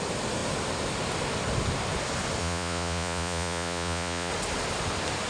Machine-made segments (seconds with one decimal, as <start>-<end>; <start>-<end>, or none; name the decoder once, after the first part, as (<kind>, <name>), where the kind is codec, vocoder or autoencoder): 2.4-4.3 (vocoder, Vocos)